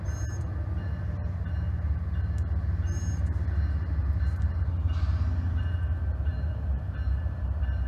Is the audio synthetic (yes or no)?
no